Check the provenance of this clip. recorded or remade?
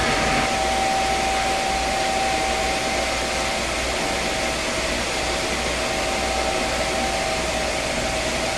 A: recorded